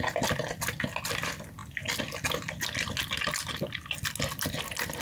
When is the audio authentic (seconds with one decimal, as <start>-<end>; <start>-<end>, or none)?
0.0-5.0